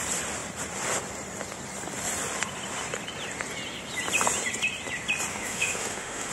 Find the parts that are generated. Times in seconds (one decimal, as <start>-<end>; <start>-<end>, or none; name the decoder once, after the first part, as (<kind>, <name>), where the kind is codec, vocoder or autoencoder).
5.3-6.3 (autoencoder, DAC-VAE)